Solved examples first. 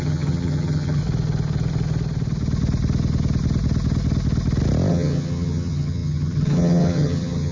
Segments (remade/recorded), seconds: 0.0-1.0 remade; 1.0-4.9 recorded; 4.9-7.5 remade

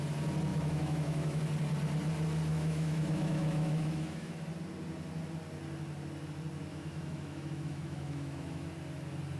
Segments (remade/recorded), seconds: 0.0-0.5 recorded; 0.5-1.4 remade; 1.4-2.5 recorded; 2.5-4.3 remade; 4.3-6.7 recorded; 6.7-8.7 remade; 8.7-9.4 recorded